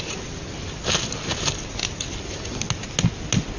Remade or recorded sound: recorded